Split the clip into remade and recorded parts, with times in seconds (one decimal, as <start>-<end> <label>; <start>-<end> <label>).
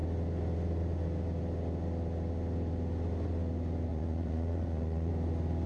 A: 0.0-3.9 recorded; 3.9-5.1 remade; 5.1-5.7 recorded